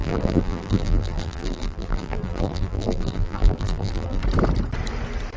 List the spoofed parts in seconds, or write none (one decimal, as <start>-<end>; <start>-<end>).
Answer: 0.0-4.2